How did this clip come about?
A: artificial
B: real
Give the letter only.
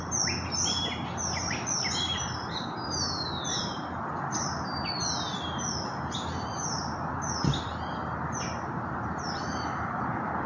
B